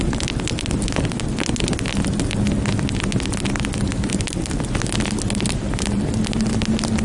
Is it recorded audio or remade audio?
recorded